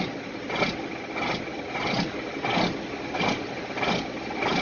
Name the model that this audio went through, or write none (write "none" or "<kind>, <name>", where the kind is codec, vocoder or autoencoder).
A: none